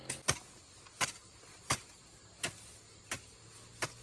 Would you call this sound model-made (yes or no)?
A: no